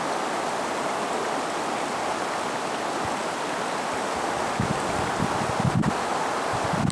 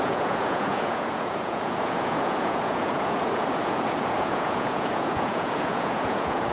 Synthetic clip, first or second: second